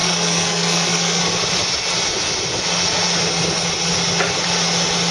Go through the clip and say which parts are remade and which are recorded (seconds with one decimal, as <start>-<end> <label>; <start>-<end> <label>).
0.0-1.2 remade; 1.2-5.1 recorded